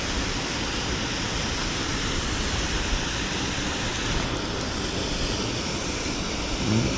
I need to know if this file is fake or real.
real